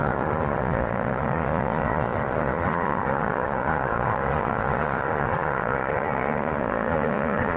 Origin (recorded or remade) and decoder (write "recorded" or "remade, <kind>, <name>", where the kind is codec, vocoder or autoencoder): remade, vocoder, Vocos